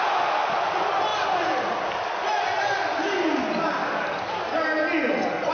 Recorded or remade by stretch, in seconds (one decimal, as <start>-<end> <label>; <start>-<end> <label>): 0.0-3.8 recorded; 3.8-4.4 remade; 4.4-5.5 recorded